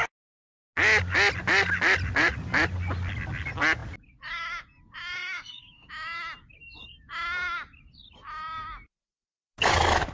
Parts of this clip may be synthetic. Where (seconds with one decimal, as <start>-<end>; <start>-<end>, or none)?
5.2-5.9